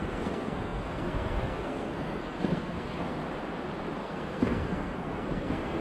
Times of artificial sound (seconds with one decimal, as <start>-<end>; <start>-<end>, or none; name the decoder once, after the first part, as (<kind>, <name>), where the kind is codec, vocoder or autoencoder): 0.0-3.2 (codec, SNAC); 4.0-5.8